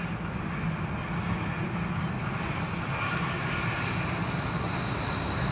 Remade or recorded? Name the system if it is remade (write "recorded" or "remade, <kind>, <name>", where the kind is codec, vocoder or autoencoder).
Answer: recorded